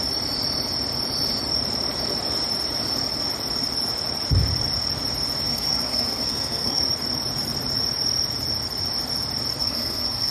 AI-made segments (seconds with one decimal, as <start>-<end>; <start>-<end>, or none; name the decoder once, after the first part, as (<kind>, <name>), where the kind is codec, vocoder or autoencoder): 5.5-6.8 (codec, SNAC); 9.6-10.3